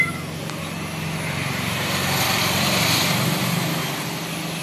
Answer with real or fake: real